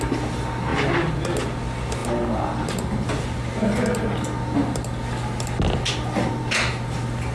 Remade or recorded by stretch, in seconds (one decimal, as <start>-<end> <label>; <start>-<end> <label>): 0.0-7.3 recorded